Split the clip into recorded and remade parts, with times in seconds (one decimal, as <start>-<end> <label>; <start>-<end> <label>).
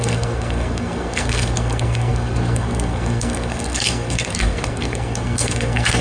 0.0-6.0 remade